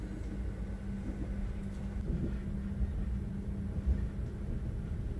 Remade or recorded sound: recorded